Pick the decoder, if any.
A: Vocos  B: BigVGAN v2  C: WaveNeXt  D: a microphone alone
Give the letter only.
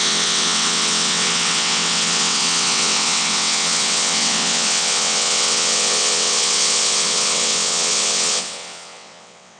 C